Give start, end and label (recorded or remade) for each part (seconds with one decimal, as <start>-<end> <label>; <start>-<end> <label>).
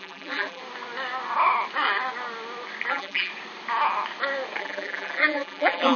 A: 0.0-0.6 remade; 0.6-2.9 recorded; 2.9-3.3 remade; 3.3-4.6 recorded; 4.6-6.0 remade